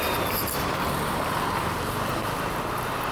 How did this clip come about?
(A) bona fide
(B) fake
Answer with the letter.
A